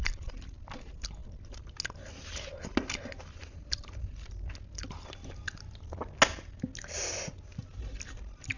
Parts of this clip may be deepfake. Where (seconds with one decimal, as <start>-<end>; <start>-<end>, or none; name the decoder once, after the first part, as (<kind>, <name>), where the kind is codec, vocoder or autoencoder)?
none